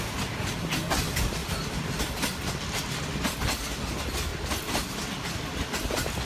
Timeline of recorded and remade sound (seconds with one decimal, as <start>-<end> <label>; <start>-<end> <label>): 0.0-1.4 recorded; 1.4-2.0 remade; 2.0-4.3 recorded; 4.3-6.3 remade